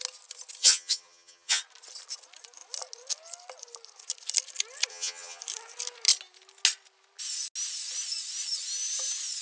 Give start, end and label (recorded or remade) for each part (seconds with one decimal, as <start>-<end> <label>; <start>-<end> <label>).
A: 0.0-0.6 recorded; 0.6-1.6 remade; 1.6-4.9 recorded; 4.9-5.4 remade; 5.4-9.4 recorded